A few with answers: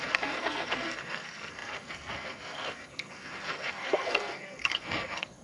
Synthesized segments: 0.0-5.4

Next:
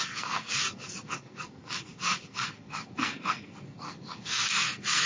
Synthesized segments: 0.0-5.1

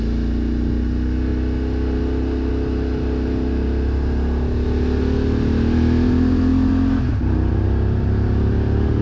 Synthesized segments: none

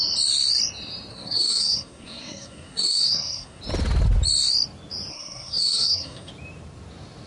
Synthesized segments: 1.1-3.6; 5.1-6.3

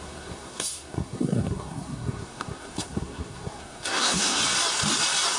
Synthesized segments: 0.0-4.4

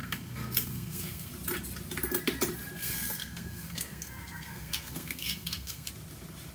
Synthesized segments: 0.0-1.3; 2.8-5.9

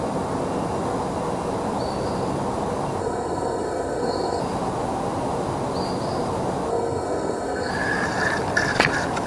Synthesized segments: 3.0-4.4; 6.7-7.7

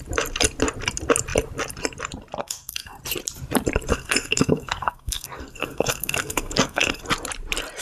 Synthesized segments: 2.4-3.0; 3.9-7.0